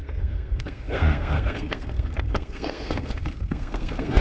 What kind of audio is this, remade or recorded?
remade